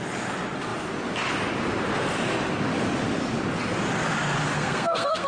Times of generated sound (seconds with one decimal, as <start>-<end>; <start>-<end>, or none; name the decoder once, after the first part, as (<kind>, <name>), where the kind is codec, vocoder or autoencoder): 4.5-5.3 (codec, SNAC)